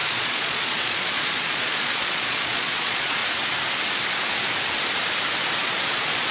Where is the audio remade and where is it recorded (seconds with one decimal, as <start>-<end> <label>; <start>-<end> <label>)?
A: 0.0-3.2 remade; 3.2-5.6 recorded; 5.6-6.3 remade